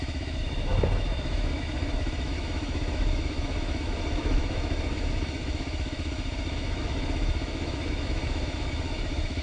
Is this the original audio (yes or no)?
no